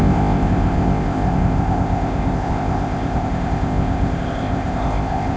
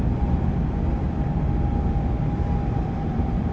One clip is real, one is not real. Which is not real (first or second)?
first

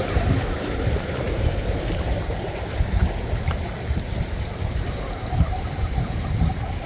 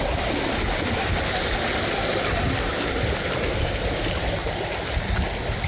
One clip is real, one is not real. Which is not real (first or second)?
first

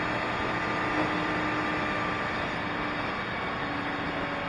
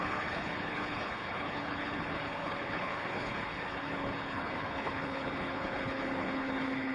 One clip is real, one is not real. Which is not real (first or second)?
second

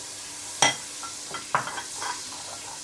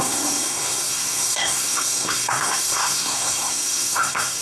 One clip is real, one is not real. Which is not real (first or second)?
second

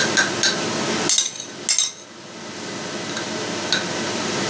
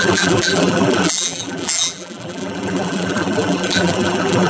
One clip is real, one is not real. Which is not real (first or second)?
second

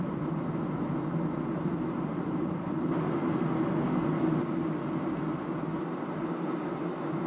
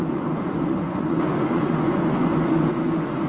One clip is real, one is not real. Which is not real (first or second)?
second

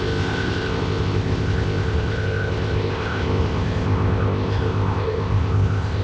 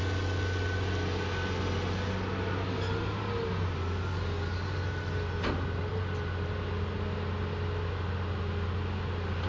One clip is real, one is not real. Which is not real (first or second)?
first